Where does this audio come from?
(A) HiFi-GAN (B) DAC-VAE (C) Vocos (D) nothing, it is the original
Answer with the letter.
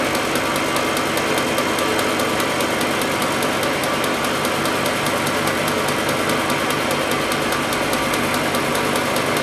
D